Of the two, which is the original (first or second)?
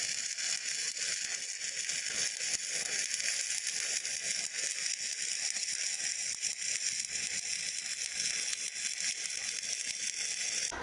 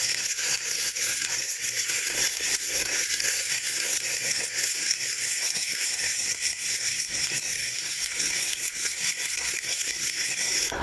first